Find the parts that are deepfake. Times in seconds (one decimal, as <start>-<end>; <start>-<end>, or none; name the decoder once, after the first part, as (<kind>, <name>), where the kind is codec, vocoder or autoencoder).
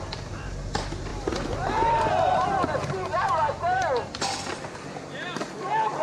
none